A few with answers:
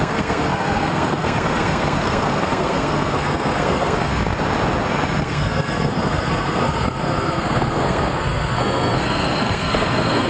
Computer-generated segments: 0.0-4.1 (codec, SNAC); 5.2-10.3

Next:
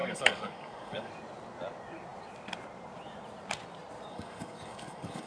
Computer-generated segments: 0.0-1.1 (codec, DAC); 4.1-5.3

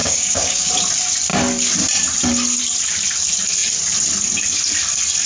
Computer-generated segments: 0.0-0.7 (codec, DAC)

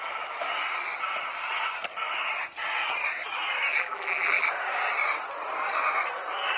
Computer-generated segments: 3.7-4.5 (vocoder, BigVGAN v2)

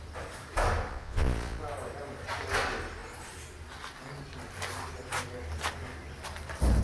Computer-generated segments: 0.9-1.6 (vocoder, Vocos)

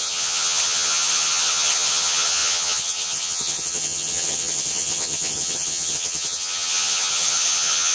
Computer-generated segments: 0.0-7.9 (vocoder, HiFi-GAN)

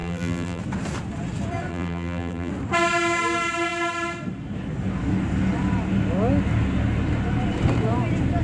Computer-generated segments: 0.0-0.6 (vocoder, BigVGAN v2); 1.7-2.5

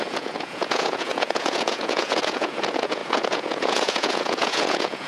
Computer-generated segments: 0.0-5.1 (vocoder, Vocos)